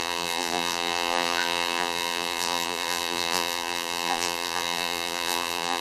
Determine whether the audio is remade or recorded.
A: remade